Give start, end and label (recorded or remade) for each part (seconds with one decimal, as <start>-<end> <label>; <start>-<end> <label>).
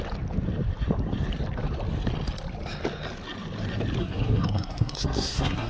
0.0-4.0 recorded; 4.0-5.7 remade